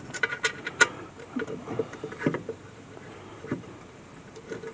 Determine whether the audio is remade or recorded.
remade